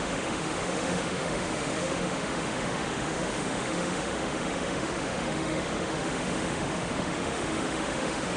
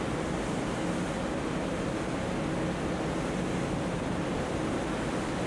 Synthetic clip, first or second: first